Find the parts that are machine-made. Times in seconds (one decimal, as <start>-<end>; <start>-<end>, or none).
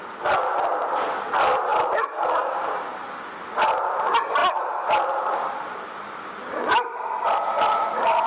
none